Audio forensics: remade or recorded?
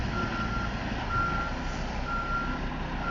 recorded